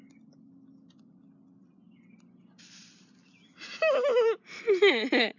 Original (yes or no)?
yes